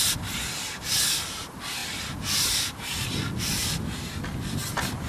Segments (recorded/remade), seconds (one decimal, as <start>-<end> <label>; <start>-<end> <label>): 0.0-5.1 recorded